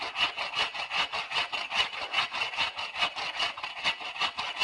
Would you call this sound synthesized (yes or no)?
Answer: no